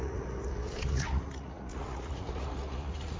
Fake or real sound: fake